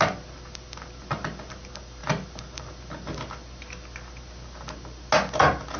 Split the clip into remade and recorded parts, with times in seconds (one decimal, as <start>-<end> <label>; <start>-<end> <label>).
0.0-2.0 recorded; 2.0-2.6 remade; 2.6-5.8 recorded